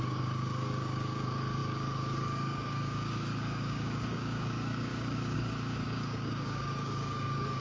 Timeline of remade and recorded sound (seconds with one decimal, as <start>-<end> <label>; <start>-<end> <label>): 0.0-7.6 remade